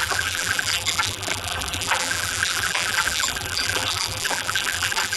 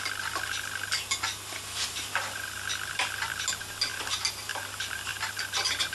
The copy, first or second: first